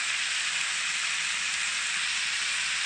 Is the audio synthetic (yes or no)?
no